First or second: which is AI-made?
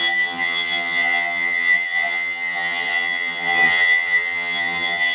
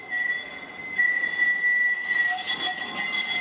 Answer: first